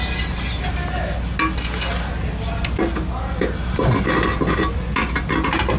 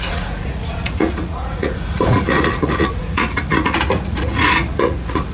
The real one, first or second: first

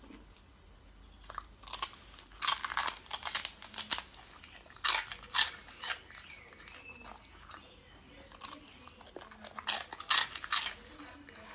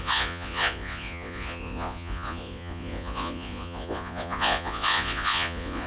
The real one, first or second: first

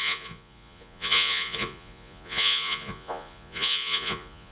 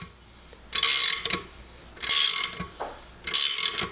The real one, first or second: second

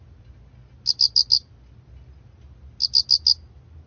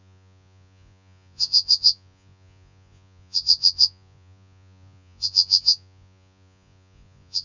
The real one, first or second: first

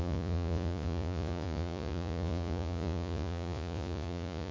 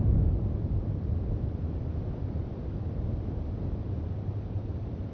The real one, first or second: second